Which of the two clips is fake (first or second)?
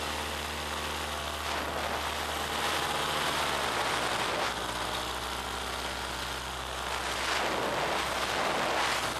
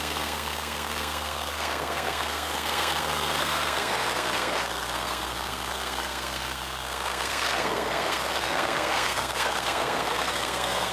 second